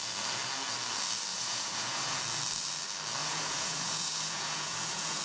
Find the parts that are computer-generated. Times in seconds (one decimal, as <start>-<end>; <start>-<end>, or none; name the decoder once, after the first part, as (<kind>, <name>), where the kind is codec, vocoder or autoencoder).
1.3-2.2 (vocoder, Vocos); 3.2-5.2